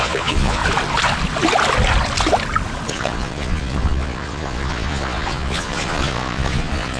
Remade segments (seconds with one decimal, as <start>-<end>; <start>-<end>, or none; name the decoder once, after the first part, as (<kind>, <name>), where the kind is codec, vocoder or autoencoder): 0.0-0.6 (vocoder, Vocos); 2.9-7.0